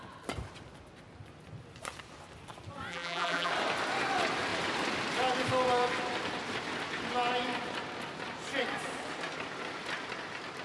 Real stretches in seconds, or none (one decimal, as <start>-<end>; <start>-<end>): 0.0-2.9; 3.5-10.6